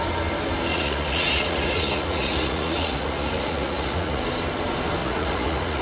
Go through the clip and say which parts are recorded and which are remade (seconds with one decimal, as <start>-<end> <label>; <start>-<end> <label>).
0.0-0.7 recorded; 0.7-4.2 remade; 4.2-5.0 recorded; 5.0-5.8 remade